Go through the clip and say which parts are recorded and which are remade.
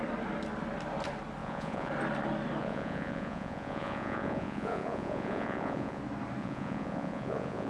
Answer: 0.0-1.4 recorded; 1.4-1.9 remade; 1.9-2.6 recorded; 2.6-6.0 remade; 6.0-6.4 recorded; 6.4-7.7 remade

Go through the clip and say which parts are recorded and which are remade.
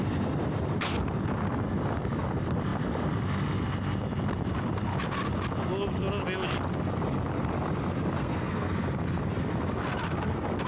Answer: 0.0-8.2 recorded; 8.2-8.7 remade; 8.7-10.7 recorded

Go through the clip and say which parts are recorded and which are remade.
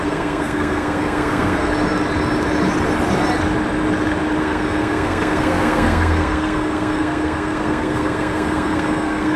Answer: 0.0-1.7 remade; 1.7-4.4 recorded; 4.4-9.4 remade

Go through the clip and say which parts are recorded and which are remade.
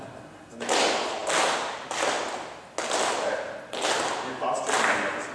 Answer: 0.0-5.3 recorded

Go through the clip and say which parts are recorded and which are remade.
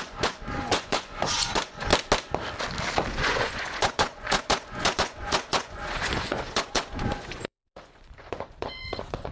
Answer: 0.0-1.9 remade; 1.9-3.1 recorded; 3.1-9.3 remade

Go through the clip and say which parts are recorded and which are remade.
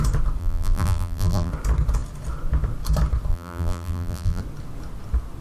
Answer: 0.0-0.4 recorded; 0.4-1.5 remade; 1.5-3.3 recorded; 3.3-4.4 remade; 4.4-5.4 recorded